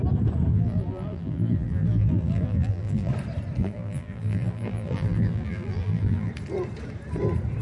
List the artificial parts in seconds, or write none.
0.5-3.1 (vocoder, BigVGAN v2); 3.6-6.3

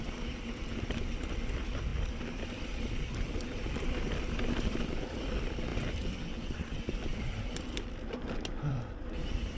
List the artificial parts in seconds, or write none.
0.0-5.7 (vocoder, BigVGAN v2); 6.8-9.6